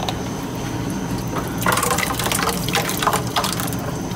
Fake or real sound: real